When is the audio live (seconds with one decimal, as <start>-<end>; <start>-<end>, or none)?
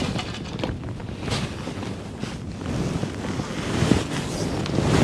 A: 0.0-5.0